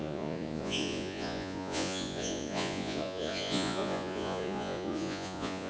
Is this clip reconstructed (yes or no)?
yes